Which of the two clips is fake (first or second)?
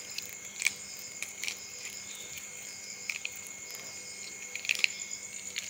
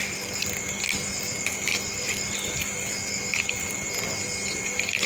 second